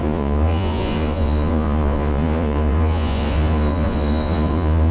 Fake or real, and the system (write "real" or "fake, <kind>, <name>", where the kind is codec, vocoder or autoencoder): fake, vocoder, Vocos